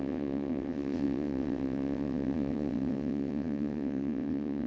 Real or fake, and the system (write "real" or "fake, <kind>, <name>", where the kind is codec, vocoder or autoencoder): fake, vocoder, WaveNeXt